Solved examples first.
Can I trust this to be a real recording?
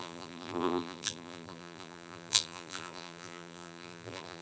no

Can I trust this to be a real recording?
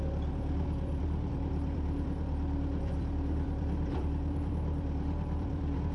no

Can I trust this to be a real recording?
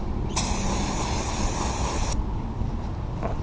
yes